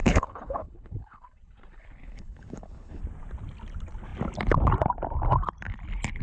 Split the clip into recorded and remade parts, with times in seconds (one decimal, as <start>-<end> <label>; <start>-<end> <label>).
0.0-3.0 remade; 3.0-6.2 recorded